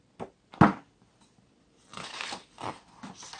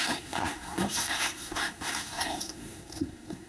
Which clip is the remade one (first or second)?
second